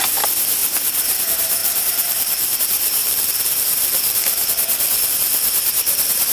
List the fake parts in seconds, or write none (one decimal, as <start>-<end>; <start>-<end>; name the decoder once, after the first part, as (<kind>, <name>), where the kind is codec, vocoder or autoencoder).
1.6-2.6 (vocoder, BigVGAN v2); 3.0-4.5